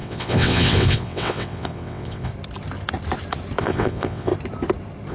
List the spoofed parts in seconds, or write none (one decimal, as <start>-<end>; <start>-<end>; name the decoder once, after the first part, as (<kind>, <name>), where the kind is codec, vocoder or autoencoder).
0.0-2.3 (vocoder, WaveNeXt); 3.6-4.3